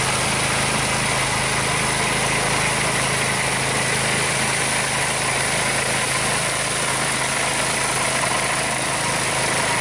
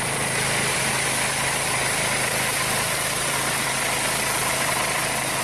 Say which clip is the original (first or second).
first